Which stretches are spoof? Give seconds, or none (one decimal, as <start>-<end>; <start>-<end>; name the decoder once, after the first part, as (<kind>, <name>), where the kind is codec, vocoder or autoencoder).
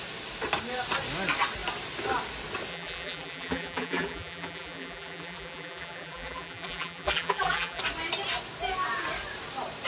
2.7-7.8 (vocoder, BigVGAN v2)